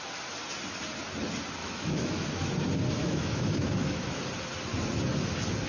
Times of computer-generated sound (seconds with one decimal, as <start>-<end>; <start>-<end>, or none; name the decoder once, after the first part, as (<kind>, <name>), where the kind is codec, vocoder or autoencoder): 1.6-2.5 (autoencoder, DAC-VAE); 3.0-4.2